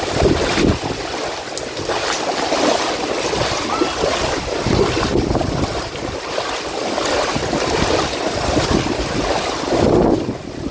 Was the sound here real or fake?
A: real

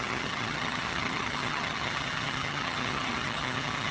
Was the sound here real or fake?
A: fake